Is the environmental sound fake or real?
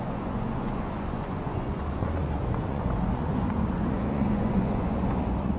fake